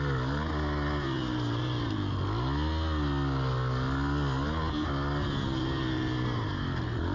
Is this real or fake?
real